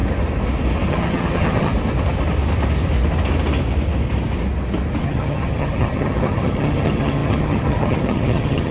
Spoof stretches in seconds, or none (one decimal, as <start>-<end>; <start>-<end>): 0.9-1.7; 5.0-8.7